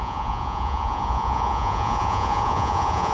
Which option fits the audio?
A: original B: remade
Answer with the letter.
B